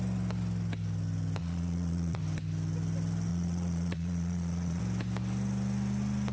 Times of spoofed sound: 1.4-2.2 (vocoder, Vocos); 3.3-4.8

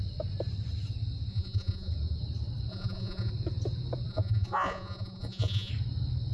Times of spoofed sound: 1.3-1.9 (vocoder, Vocos); 2.7-3.3; 4.1-5.7